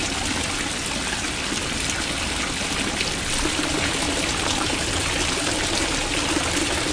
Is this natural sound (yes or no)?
yes